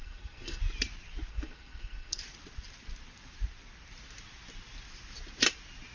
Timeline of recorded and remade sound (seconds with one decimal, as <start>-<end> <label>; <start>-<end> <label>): 0.0-0.6 remade; 0.6-1.3 recorded; 1.3-2.2 remade; 2.2-5.9 recorded